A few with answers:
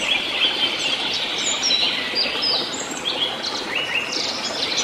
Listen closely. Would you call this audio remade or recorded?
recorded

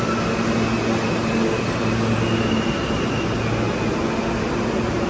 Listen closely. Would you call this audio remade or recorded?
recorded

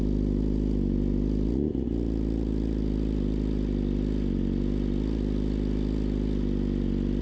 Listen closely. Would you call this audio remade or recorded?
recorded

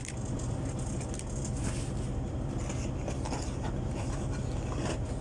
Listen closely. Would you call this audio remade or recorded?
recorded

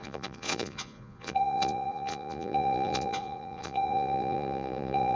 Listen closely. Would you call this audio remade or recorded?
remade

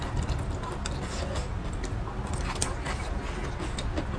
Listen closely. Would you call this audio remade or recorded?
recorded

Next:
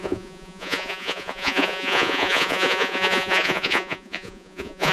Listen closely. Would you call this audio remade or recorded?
remade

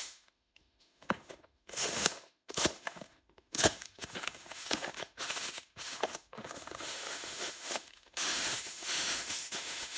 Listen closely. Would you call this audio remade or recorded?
remade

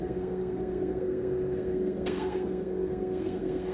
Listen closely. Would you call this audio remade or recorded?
remade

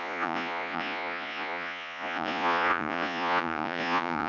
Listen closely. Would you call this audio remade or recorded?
remade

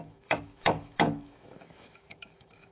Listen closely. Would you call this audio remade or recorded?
remade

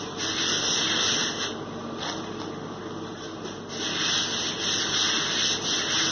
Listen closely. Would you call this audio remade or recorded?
recorded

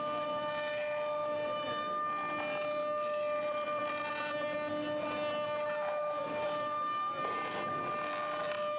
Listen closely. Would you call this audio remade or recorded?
recorded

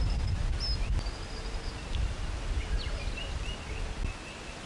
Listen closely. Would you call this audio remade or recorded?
recorded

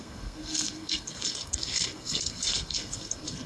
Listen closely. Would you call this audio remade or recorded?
remade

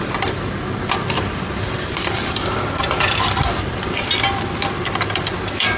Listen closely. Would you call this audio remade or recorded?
remade